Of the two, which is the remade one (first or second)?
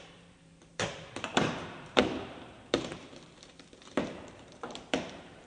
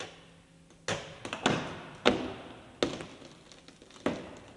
first